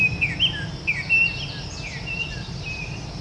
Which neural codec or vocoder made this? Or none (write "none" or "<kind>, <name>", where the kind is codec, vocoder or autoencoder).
none